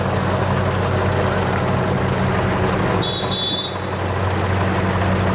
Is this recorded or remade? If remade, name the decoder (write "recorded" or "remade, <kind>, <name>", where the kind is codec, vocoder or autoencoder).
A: recorded